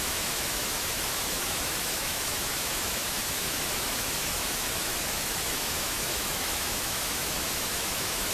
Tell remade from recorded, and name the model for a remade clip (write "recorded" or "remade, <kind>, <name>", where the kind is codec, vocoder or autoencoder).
remade, autoencoder, DAC-VAE